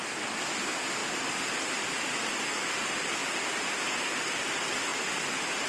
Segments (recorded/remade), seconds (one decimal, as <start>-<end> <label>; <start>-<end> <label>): 0.0-3.2 recorded; 3.2-3.7 remade; 3.7-5.7 recorded